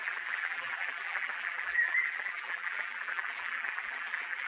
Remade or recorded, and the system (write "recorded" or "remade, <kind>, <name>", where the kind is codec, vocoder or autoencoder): remade, vocoder, BigVGAN v2